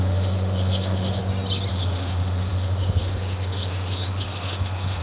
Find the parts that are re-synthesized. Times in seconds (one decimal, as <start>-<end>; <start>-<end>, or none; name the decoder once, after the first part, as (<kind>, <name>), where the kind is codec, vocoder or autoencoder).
0.0-1.2 (autoencoder, DAC-VAE); 1.7-5.0

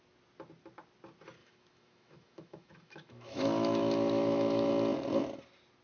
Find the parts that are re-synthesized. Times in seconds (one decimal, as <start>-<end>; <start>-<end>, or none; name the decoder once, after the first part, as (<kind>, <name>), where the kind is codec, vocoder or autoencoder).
1.4-4.7 (autoencoder, DAC-VAE)

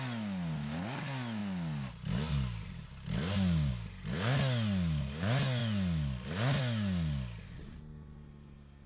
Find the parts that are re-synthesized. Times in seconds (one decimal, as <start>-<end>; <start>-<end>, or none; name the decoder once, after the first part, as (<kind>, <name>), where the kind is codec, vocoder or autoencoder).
none

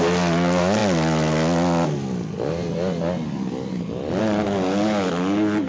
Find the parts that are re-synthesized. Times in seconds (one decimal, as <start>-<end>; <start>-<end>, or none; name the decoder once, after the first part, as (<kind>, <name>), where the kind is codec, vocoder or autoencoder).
none

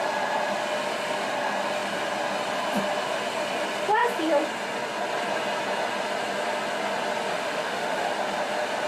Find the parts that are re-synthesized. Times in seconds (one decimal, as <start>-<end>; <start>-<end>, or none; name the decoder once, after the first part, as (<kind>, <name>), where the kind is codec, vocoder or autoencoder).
7.3-8.1 (autoencoder, DAC-VAE)

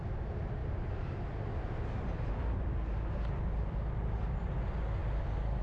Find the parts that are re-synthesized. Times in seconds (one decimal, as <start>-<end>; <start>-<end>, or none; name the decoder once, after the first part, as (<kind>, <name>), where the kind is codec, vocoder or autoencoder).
none